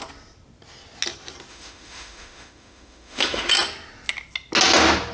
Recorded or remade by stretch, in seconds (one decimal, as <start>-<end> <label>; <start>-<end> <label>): 0.0-1.5 recorded; 1.5-3.5 remade; 3.5-5.1 recorded